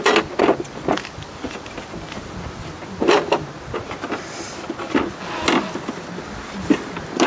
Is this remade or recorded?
recorded